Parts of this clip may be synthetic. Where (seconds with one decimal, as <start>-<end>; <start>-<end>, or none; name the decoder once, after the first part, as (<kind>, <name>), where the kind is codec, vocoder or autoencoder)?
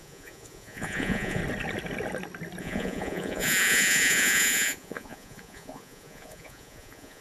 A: 0.0-1.4 (vocoder, Vocos); 2.6-7.2